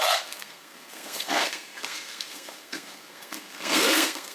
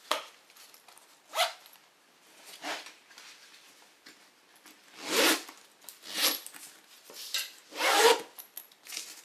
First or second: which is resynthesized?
first